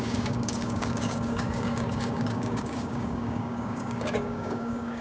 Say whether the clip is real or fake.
fake